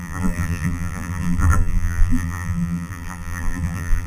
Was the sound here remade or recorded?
remade